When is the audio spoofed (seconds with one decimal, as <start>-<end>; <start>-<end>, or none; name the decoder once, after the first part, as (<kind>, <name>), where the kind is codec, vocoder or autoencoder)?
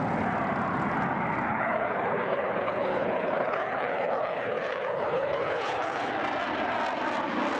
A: 1.5-6.1 (codec, HILCodec)